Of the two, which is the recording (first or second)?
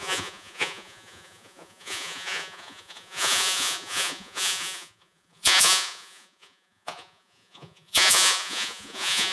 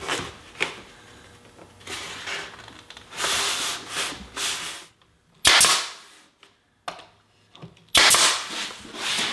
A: second